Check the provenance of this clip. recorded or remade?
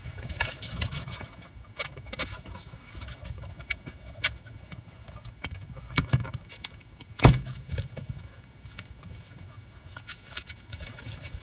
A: remade